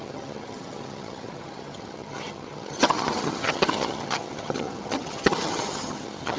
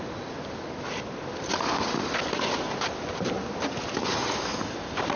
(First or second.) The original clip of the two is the second